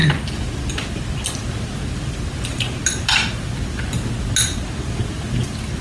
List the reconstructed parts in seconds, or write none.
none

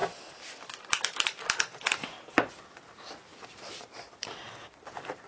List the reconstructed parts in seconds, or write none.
3.3-4.0 (vocoder, BigVGAN v2)

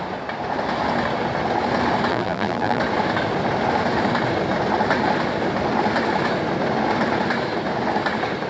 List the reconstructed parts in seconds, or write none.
2.1-2.8 (vocoder, BigVGAN v2)

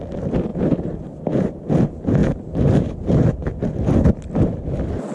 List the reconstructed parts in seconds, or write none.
0.5-1.7 (vocoder, BigVGAN v2); 2.2-3.5

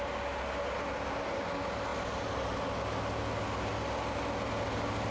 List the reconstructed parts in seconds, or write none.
none

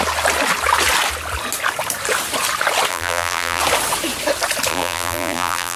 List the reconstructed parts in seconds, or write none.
2.9-3.6 (vocoder, BigVGAN v2); 4.7-5.8

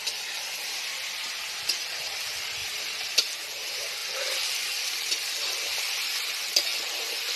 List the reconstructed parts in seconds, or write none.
2.6-3.2 (vocoder, BigVGAN v2); 6.7-7.4